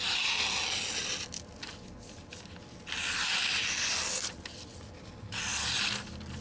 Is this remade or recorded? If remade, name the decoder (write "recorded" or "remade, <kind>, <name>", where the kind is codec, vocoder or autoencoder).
recorded